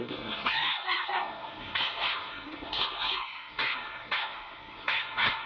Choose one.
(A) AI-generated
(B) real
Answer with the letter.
A